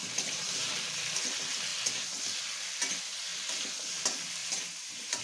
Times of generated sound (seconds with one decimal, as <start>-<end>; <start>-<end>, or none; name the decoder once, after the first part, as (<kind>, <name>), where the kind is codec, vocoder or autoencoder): 0.0-0.7 (vocoder, BigVGAN v2); 4.4-5.2

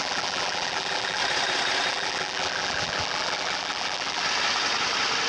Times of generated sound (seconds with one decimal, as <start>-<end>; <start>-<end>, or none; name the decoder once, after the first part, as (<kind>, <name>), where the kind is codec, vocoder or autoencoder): 0.0-1.2 (vocoder, BigVGAN v2); 1.9-4.2

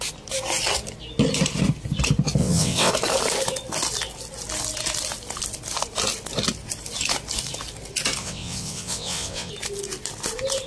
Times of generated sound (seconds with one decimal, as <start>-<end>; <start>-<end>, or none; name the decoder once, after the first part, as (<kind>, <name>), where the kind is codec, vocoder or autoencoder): 2.4-2.9 (vocoder, WaveNeXt); 8.2-9.5

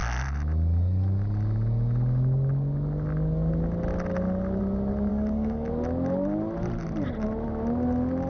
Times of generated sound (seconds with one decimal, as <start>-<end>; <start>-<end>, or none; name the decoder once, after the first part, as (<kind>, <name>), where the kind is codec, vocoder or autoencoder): 5.1-5.7 (codec, DAC)

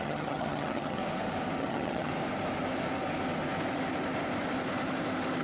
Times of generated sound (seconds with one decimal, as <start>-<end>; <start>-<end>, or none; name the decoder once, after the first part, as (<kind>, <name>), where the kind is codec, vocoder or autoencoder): 0.0-1.0 (vocoder, HiFi-GAN); 1.6-2.1